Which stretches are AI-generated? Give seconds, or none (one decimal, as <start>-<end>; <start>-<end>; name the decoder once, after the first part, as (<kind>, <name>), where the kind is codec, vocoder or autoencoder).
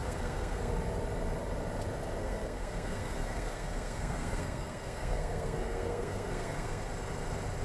0.0-0.7 (codec, SNAC); 2.2-6.8